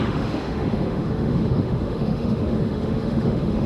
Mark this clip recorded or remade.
remade